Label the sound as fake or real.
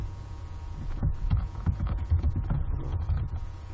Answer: fake